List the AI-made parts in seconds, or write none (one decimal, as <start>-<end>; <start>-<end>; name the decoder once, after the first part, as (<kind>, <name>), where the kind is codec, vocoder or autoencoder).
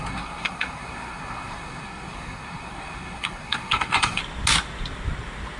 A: 0.0-4.2 (codec, SNAC)